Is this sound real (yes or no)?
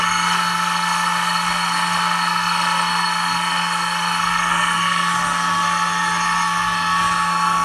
no